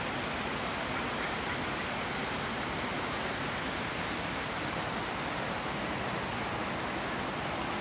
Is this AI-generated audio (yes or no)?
no